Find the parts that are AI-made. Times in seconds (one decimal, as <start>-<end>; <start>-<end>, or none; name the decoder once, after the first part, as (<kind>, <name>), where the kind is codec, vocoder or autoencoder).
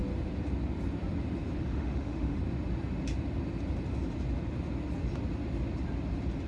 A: 1.6-2.4 (autoencoder, DAC-VAE)